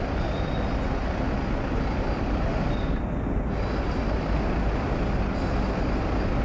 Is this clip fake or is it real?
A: real